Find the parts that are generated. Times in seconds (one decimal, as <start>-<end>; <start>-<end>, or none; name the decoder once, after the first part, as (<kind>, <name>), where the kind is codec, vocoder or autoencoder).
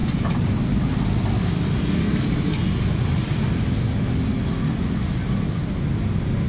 none